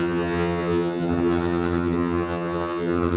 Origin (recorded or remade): remade